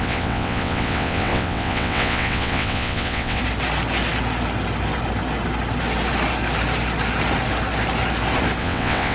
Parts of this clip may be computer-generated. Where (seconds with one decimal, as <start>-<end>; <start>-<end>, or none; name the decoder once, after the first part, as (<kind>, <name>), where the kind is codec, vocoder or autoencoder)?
0.0-3.4 (vocoder, WaveNeXt); 8.6-9.1